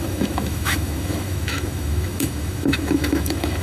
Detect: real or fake fake